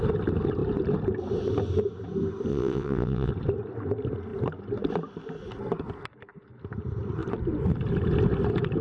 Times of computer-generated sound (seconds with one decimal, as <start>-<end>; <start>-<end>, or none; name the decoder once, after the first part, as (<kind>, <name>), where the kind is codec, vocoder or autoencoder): 2.5-3.3 (vocoder, WaveNeXt)